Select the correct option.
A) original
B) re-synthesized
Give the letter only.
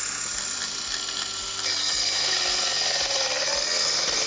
A